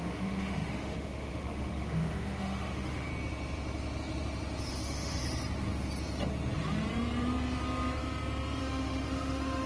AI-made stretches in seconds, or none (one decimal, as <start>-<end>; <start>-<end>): 0.0-3.1; 4.7-5.2; 8.6-9.7